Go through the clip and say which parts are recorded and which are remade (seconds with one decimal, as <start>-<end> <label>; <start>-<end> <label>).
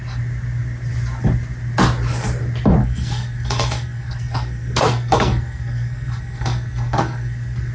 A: 0.0-2.8 recorded; 2.8-7.7 remade